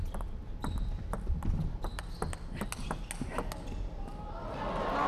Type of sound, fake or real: real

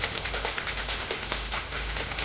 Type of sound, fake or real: fake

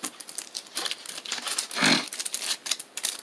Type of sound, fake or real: real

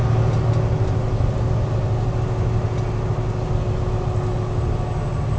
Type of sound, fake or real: real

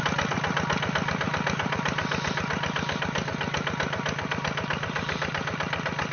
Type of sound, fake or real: real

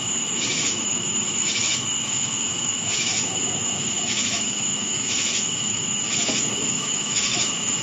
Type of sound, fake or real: fake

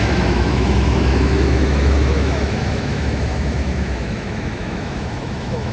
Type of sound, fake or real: fake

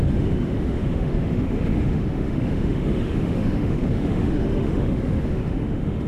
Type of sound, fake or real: fake